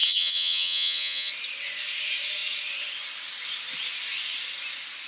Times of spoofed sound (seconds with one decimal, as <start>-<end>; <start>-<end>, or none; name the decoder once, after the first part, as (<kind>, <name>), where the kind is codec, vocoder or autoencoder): 0.0-1.3 (vocoder, HiFi-GAN)